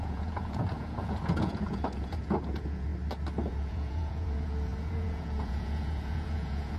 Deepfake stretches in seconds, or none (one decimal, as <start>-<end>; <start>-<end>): 0.0-2.9; 3.5-6.8